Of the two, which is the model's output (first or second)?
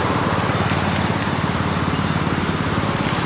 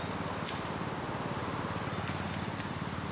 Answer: first